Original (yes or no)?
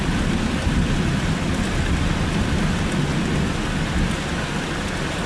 yes